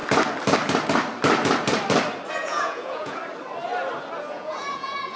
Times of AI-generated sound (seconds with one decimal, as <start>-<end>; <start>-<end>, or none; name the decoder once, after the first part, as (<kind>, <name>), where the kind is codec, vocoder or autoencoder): 2.3-3.2 (vocoder, Vocos); 4.2-5.2